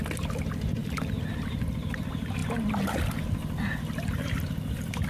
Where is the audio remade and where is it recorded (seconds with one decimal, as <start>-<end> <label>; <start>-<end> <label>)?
0.0-5.1 recorded

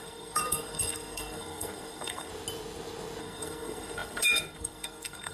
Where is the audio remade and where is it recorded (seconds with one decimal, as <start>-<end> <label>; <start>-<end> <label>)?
0.0-2.3 remade; 2.3-3.2 recorded; 3.2-5.3 remade

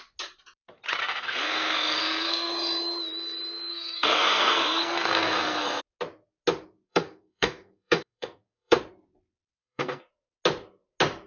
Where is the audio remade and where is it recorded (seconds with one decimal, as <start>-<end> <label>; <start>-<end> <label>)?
0.0-1.0 recorded; 1.0-2.5 remade; 2.5-3.7 recorded; 3.7-5.8 remade; 5.8-6.9 recorded; 6.9-8.8 remade; 8.8-9.5 recorded; 9.5-10.1 remade; 10.1-11.3 recorded

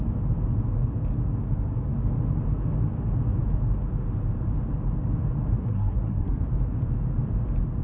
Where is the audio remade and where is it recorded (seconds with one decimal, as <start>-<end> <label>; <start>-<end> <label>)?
0.0-5.6 recorded; 5.6-6.4 remade; 6.4-7.8 recorded

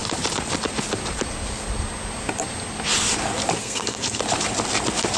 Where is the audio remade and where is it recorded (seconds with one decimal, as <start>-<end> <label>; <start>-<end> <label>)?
0.0-3.6 recorded; 3.6-4.2 remade; 4.2-5.2 recorded

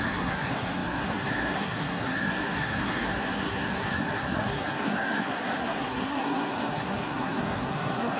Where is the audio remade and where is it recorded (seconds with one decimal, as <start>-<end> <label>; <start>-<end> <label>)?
0.0-8.2 remade